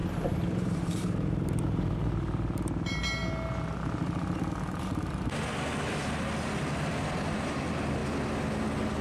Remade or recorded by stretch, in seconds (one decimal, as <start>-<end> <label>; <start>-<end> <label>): 0.0-2.1 remade; 2.1-9.0 recorded